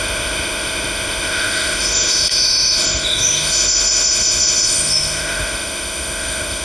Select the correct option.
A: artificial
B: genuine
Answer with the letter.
A